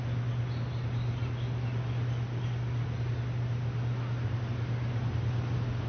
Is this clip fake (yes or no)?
no